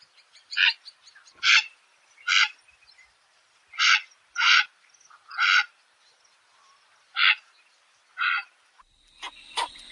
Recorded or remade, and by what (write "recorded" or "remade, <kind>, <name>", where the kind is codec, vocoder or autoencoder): recorded